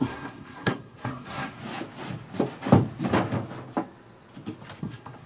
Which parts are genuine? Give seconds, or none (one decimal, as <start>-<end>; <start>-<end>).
1.6-4.8